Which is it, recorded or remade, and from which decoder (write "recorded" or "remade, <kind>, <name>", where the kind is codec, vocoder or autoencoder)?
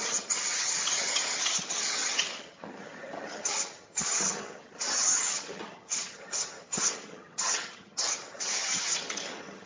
remade, vocoder, HiFi-GAN